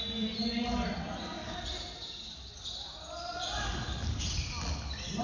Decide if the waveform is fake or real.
real